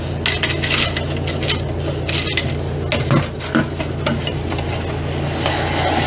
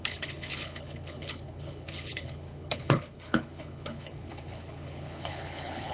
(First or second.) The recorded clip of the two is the first